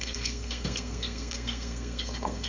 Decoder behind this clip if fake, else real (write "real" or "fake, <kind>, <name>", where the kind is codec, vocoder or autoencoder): fake, codec, SNAC